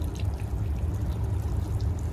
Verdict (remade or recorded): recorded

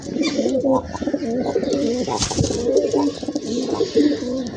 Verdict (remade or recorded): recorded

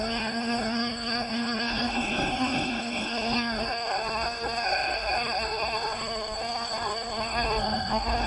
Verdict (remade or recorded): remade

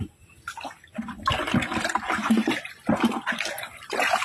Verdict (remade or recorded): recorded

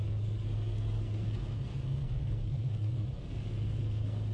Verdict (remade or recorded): remade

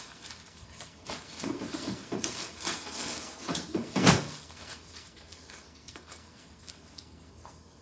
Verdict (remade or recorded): remade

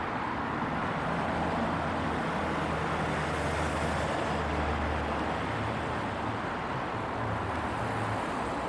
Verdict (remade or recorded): recorded